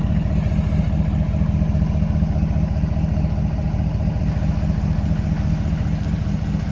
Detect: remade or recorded recorded